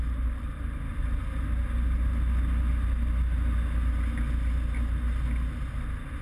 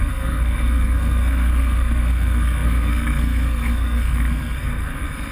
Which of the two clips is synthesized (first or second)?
second